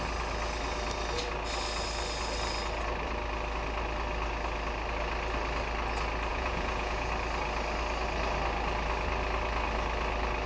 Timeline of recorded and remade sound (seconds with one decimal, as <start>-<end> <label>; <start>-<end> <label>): 0.0-6.3 recorded; 6.3-7.1 remade; 7.1-10.5 recorded